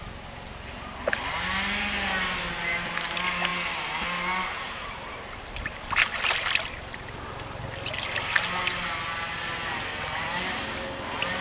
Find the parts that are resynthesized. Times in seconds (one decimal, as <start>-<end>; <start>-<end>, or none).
none